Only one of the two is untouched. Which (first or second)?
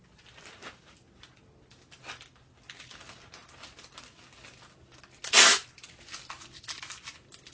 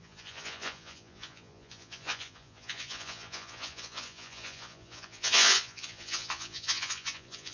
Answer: first